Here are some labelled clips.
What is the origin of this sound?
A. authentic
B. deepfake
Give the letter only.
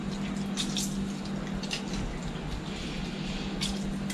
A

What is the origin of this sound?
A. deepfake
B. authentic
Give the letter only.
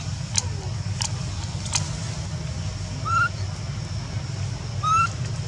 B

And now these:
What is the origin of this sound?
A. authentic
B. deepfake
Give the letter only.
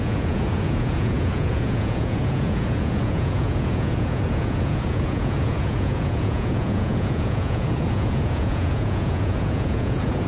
B